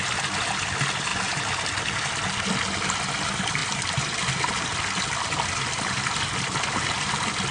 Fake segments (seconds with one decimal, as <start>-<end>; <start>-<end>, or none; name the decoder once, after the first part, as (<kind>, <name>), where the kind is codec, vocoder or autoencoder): none